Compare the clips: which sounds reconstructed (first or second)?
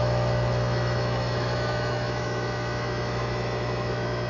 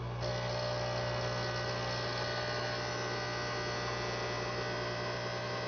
first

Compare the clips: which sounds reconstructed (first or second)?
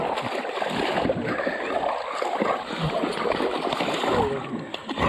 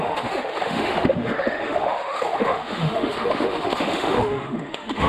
second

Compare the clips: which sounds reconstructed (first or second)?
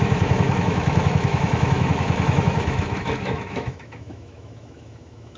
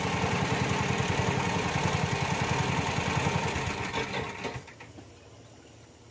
first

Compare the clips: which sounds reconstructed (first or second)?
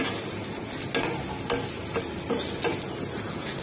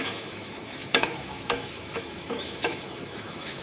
second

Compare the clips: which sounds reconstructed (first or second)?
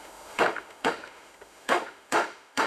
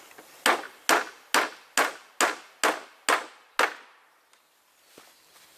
first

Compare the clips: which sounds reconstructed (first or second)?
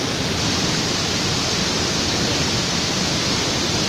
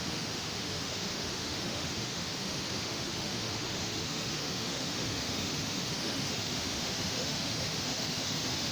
second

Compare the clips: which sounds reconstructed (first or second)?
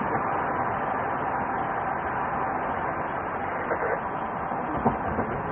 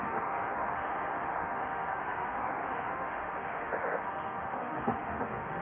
second